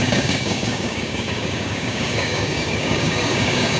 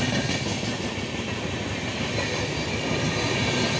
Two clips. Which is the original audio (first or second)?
second